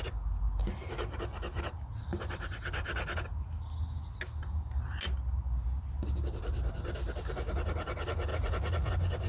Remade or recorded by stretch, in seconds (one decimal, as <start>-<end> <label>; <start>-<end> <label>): 0.0-8.3 recorded; 8.3-8.9 remade; 8.9-9.3 recorded